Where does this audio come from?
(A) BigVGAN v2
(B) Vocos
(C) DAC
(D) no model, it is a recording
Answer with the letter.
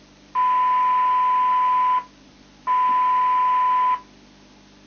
D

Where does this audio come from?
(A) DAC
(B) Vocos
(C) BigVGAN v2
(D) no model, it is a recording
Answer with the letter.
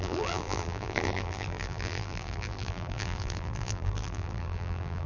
C